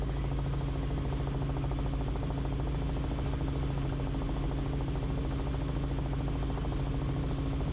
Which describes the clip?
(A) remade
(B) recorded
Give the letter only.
B